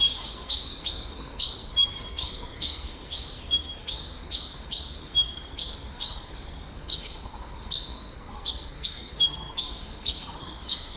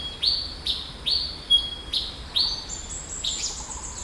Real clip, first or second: second